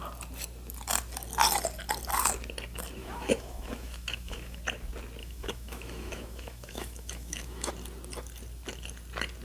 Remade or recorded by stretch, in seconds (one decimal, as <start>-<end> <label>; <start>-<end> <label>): 0.0-3.0 recorded; 3.0-4.6 remade; 4.6-5.2 recorded; 5.2-7.7 remade; 7.7-9.4 recorded